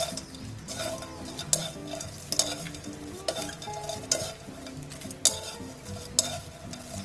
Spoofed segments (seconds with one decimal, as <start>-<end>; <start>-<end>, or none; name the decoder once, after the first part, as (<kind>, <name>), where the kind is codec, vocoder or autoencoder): none